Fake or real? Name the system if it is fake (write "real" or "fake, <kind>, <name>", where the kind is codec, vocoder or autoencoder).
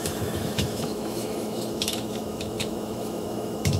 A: fake, autoencoder, DAC-VAE